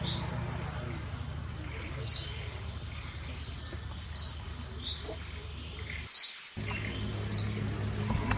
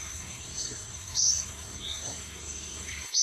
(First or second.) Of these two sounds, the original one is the first